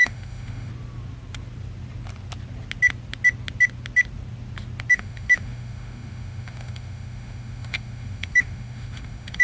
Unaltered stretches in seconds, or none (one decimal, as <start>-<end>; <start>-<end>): 0.7-4.9